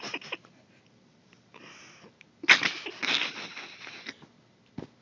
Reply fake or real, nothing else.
real